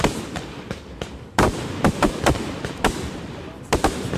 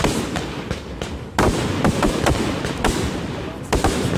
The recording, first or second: second